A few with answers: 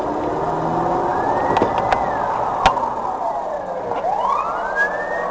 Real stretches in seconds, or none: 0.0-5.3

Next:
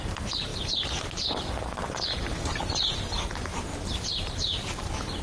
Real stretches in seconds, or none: 3.5-4.1

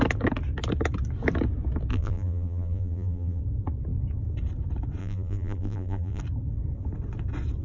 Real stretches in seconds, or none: 0.0-1.9; 3.4-5.0; 6.2-7.6

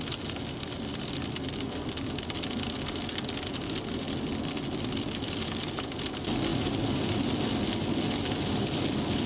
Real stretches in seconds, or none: 0.0-9.3

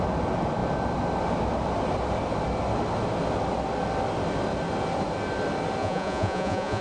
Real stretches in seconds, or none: 0.0-5.8

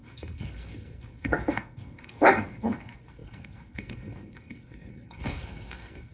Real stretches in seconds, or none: none